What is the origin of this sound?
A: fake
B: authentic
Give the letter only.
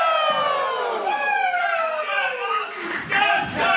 B